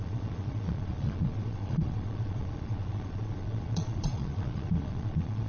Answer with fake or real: fake